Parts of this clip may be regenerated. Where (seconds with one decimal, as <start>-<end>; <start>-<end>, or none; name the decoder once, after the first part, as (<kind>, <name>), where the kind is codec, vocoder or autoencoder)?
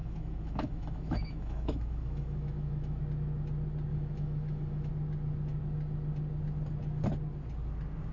0.0-3.0 (autoencoder, DAC-VAE); 3.9-4.9